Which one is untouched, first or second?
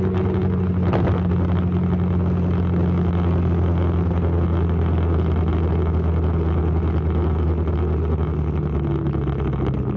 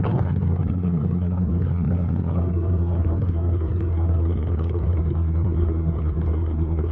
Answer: first